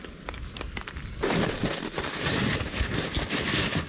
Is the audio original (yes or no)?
yes